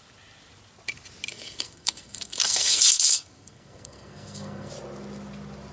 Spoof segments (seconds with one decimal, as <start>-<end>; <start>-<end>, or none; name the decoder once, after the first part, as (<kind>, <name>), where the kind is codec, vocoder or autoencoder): 1.3-4.7 (codec, SNAC)